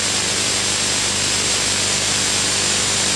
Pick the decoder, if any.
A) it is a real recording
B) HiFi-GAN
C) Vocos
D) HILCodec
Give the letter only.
A